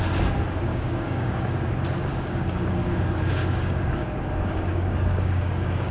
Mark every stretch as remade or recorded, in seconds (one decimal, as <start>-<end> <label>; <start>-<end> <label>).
0.0-0.7 recorded; 0.7-1.7 remade; 1.7-2.1 recorded; 2.1-5.9 remade